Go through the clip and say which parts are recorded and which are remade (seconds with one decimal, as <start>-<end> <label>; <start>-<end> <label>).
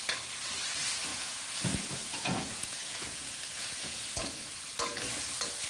0.0-1.1 recorded; 1.1-4.5 remade; 4.5-5.7 recorded